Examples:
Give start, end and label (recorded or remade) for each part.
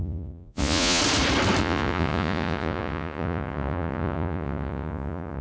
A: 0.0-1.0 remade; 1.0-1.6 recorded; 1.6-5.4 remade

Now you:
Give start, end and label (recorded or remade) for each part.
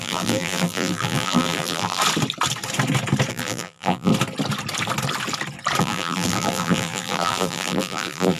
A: 0.0-2.0 remade; 2.0-3.3 recorded; 3.3-4.1 remade; 4.1-5.8 recorded; 5.8-8.4 remade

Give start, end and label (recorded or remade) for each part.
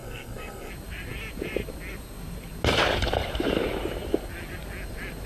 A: 0.0-0.7 remade; 0.7-5.3 recorded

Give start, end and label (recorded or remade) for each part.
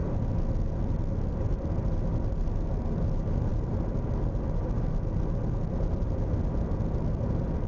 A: 0.0-7.7 recorded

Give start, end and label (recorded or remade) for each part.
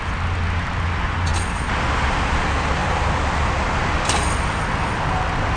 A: 0.0-5.6 recorded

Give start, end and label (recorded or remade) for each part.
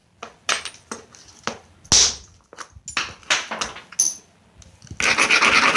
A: 0.0-5.8 recorded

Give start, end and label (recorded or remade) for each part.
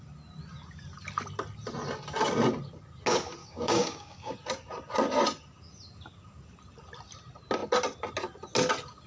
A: 0.0-3.4 recorded; 3.4-4.3 remade; 4.3-9.1 recorded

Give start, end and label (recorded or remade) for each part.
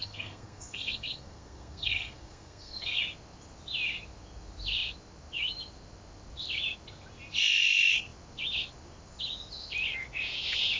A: 0.0-3.0 remade; 3.0-10.8 recorded